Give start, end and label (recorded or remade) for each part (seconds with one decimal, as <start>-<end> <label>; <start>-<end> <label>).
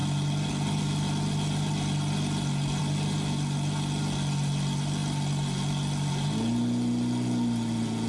0.0-8.1 recorded